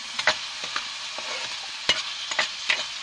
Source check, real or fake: real